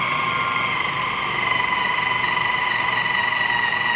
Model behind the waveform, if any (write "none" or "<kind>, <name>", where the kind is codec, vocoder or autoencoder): none